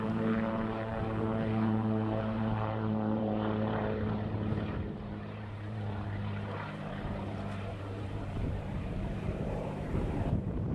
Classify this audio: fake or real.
fake